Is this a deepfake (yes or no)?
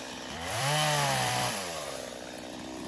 yes